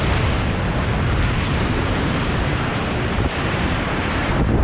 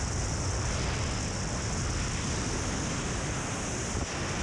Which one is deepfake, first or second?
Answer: first